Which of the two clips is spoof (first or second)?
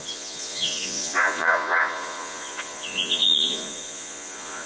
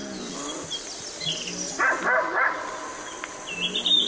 first